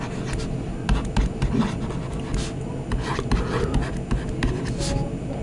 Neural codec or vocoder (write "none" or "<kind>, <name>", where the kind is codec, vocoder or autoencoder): none